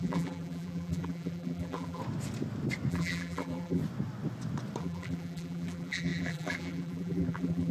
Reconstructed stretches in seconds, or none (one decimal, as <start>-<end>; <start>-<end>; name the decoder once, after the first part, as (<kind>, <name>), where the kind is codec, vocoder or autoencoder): 0.0-2.0 (vocoder, BigVGAN v2); 2.9-3.8; 4.8-7.7